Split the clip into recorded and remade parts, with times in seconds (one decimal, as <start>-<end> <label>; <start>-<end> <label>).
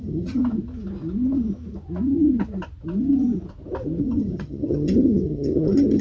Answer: 0.0-0.4 remade; 0.4-4.0 recorded; 4.0-6.0 remade